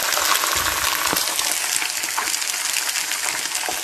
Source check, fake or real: real